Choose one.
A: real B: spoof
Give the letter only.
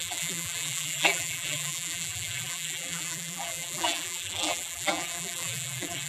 B